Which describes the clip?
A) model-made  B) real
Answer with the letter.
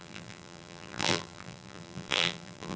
A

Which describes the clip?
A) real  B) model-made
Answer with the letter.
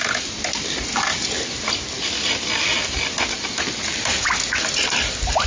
A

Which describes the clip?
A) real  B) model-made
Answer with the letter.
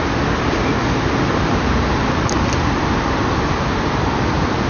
A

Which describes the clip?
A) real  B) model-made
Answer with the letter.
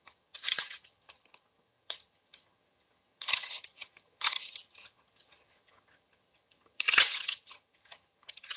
B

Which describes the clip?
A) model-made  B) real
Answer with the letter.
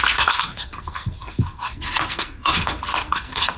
A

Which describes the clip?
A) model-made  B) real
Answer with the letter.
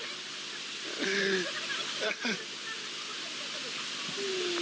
B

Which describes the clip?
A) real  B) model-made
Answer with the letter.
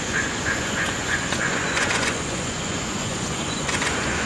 B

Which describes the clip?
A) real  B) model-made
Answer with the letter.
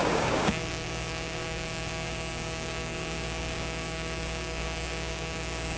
B